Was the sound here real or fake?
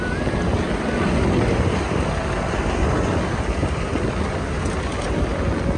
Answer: real